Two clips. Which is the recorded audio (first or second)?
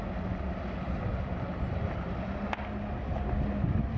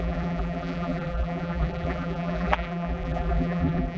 first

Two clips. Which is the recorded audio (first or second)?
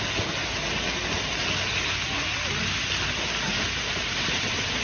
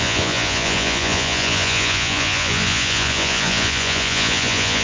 first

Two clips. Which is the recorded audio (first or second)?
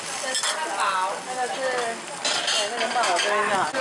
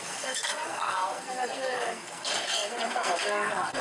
first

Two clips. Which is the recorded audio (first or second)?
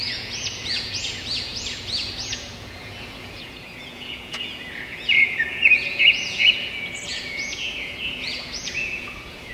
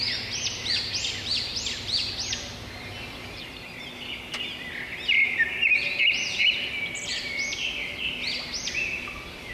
second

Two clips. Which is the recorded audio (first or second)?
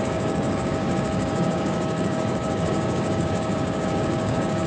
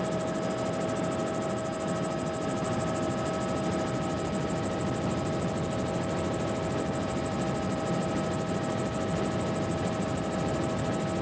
second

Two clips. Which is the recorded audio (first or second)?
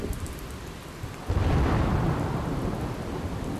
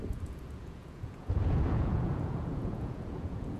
first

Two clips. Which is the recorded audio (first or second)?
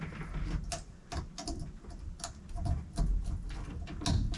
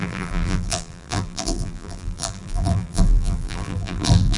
first